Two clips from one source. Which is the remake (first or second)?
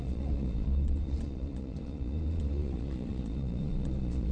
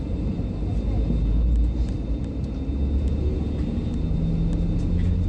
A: first